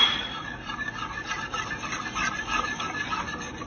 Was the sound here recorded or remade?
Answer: recorded